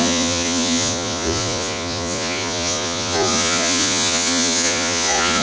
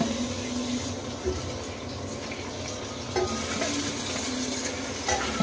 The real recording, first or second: second